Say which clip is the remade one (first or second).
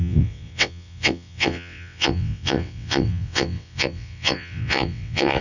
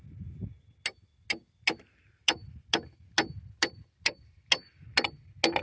first